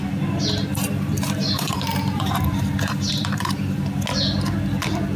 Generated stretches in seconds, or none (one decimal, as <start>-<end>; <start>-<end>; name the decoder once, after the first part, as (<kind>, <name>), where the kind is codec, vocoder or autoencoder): 0.7-3.8 (vocoder, BigVGAN v2)